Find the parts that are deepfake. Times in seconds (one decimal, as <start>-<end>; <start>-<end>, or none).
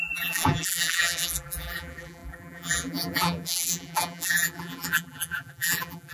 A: 0.0-6.1